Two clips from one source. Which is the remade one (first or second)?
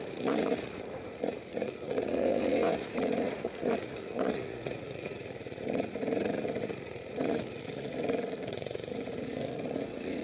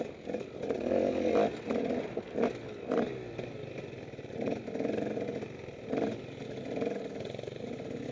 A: first